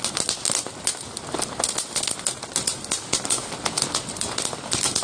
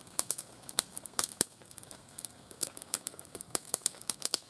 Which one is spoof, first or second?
second